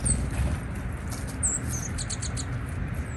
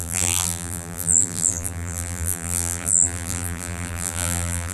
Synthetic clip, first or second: second